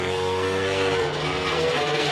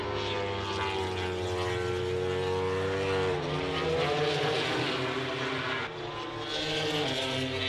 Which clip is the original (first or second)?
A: second